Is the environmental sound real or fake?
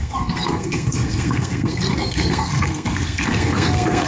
fake